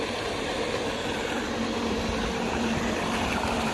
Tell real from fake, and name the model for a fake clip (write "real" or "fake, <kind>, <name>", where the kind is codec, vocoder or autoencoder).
fake, vocoder, BigVGAN v2